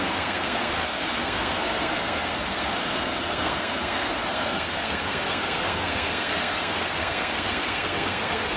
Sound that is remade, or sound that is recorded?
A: remade